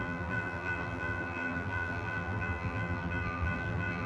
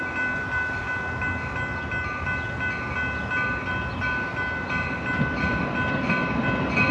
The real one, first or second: second